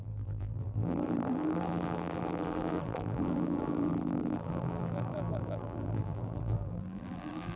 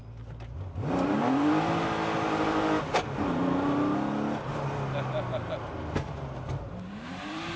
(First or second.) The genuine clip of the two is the second